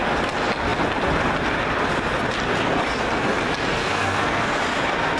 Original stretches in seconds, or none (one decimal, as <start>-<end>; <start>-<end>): 0.0-3.8; 4.6-5.2